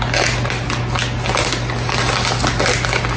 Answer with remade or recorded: recorded